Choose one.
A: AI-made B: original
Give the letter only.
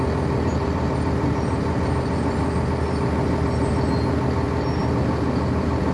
B